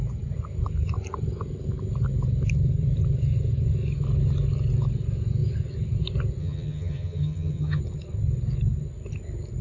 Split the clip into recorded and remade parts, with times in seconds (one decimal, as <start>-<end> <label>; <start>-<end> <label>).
0.0-6.4 recorded; 6.4-7.8 remade; 7.8-9.6 recorded